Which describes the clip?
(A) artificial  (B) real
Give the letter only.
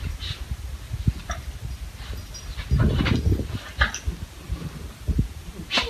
B